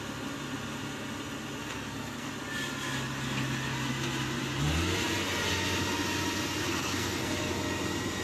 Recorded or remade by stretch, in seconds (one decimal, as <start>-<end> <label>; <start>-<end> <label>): 0.0-1.6 recorded; 1.6-2.3 remade; 2.3-6.6 recorded; 6.6-7.5 remade; 7.5-8.2 recorded